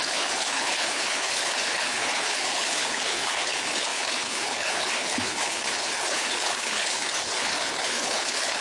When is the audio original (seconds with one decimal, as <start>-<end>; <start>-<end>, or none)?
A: none